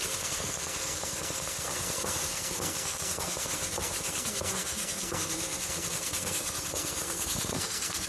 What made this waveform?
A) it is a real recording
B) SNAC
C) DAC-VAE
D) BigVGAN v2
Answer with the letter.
B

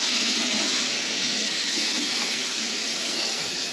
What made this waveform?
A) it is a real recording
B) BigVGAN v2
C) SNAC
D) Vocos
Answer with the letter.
C